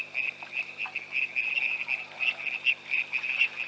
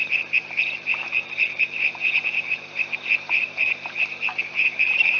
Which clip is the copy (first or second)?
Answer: second